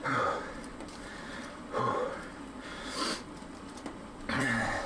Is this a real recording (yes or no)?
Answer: no